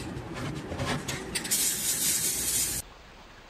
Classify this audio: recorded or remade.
recorded